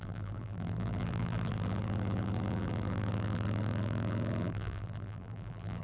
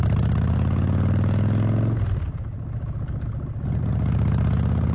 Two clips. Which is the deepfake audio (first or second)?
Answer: first